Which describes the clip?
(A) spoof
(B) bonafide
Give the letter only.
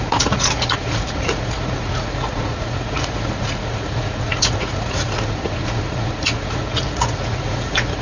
A